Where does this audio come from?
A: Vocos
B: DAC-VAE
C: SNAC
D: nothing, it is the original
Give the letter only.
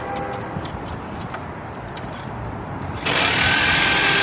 D